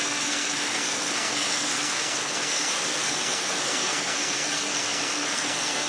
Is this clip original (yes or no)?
no